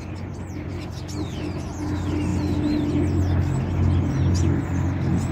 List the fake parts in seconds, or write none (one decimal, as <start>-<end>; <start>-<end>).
none